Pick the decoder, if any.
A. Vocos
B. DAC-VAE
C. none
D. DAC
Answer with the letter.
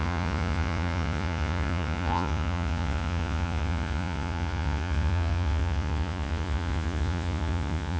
A